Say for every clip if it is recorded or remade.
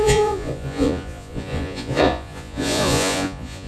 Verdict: remade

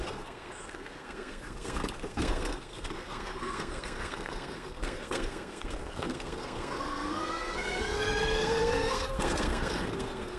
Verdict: remade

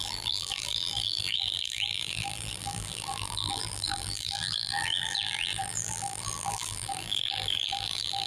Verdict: remade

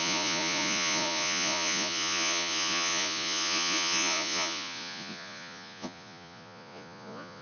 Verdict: remade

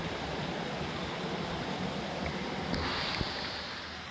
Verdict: recorded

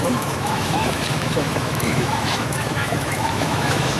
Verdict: remade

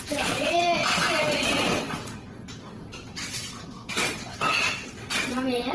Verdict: remade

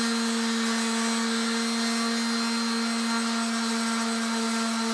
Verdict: recorded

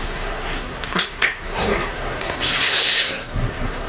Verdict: remade